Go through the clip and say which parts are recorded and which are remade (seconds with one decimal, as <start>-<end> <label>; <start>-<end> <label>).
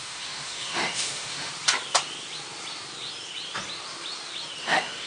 0.0-1.5 remade; 1.5-4.6 recorded; 4.6-5.1 remade